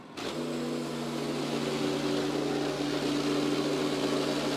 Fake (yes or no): no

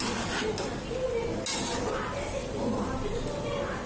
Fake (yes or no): no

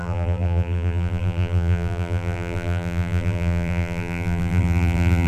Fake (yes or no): yes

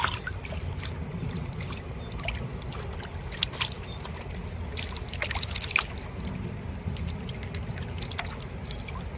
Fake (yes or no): no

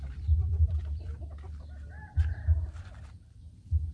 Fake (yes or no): yes